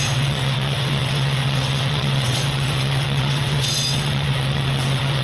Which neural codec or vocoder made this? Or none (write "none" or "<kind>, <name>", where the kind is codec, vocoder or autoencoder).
vocoder, WaveNeXt